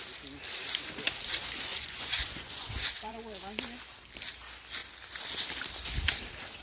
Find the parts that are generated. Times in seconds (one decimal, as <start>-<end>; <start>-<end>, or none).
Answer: 1.7-3.4